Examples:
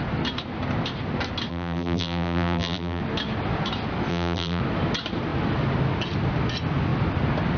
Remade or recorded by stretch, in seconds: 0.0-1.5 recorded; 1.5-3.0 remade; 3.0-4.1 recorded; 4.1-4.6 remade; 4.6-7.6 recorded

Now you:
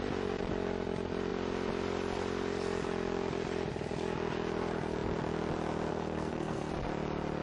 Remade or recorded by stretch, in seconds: 0.0-5.9 recorded; 5.9-6.7 remade; 6.7-7.4 recorded